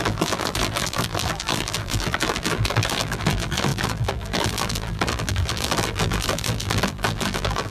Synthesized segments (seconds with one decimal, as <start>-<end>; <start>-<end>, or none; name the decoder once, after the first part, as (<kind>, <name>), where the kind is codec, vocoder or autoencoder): 0.0-7.7 (vocoder, BigVGAN v2)